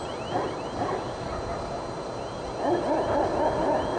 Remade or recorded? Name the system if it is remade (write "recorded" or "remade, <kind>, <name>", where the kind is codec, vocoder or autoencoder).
recorded